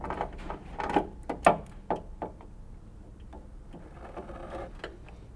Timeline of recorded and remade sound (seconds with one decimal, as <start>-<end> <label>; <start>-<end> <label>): 0.0-5.4 recorded